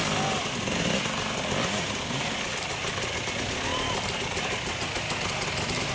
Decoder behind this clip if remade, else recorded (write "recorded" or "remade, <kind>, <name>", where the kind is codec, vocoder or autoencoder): recorded